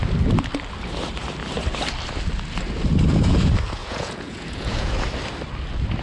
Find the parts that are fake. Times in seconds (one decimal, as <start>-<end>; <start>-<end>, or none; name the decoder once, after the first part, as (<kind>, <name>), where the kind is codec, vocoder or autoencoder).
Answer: 3.8-4.9 (vocoder, Vocos)